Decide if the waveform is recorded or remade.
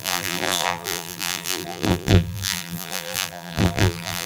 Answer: remade